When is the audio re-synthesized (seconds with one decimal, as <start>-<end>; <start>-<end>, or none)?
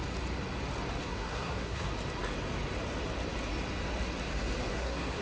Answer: 1.0-1.9; 4.7-5.2